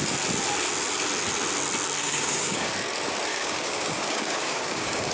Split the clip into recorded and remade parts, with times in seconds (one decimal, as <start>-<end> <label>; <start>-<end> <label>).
0.0-2.0 recorded; 2.0-2.7 remade; 2.7-3.3 recorded; 3.3-5.1 remade